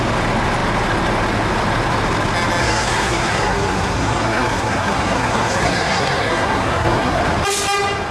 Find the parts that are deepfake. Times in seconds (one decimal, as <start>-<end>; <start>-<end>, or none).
2.6-7.2